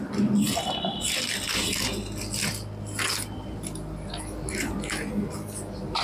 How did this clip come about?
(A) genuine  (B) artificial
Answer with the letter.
A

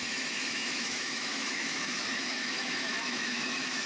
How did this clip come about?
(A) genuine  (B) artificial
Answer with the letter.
B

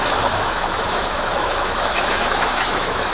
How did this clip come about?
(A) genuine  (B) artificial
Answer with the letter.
B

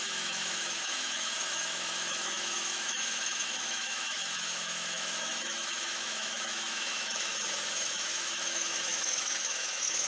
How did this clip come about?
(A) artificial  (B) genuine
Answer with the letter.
A